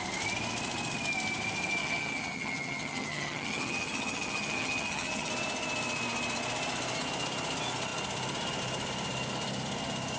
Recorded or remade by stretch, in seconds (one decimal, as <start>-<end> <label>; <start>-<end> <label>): 0.0-1.8 recorded; 1.8-5.3 remade; 5.3-10.2 recorded